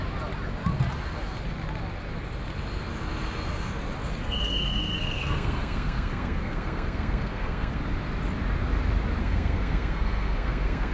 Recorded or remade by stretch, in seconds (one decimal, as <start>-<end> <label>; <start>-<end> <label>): 0.0-4.1 recorded; 4.1-7.8 remade; 7.8-9.2 recorded; 9.2-10.9 remade